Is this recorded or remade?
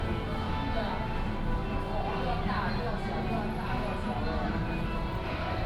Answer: recorded